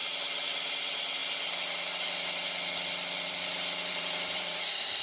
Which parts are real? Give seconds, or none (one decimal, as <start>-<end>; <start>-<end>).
0.0-0.7; 1.2-3.9